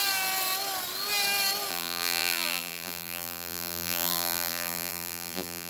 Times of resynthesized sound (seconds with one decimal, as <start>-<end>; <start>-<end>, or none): 1.7-5.7